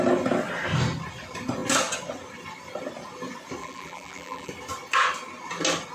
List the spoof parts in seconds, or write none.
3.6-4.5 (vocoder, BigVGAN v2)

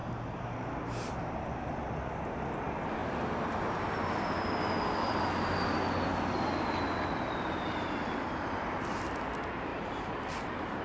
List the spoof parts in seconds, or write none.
0.0-1.1 (vocoder, BigVGAN v2); 9.7-10.8

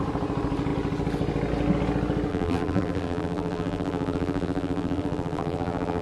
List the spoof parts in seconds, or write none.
2.3-6.0 (vocoder, BigVGAN v2)

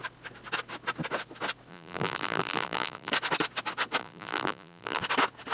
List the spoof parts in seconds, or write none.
1.7-3.1 (vocoder, BigVGAN v2); 4.0-5.0

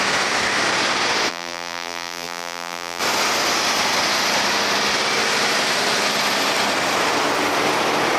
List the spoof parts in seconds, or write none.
1.3-3.0 (vocoder, BigVGAN v2)

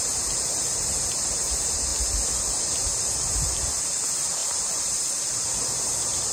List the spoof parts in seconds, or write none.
0.0-1.9 (vocoder, BigVGAN v2); 2.4-4.4; 5.7-6.3